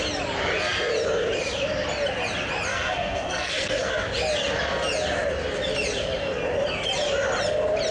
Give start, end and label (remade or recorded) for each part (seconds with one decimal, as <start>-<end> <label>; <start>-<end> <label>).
0.0-2.7 recorded; 2.7-3.9 remade; 3.9-7.9 recorded